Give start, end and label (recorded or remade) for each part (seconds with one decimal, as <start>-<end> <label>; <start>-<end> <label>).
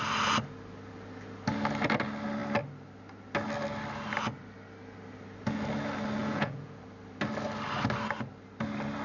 0.0-6.2 recorded; 6.2-6.8 remade; 6.8-9.0 recorded